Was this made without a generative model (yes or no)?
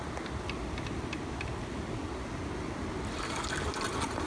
yes